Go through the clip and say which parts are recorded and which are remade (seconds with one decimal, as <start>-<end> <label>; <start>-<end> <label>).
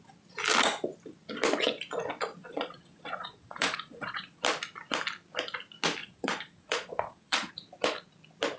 0.0-2.4 recorded; 2.4-4.4 remade; 4.4-6.0 recorded; 6.0-7.5 remade; 7.5-8.6 recorded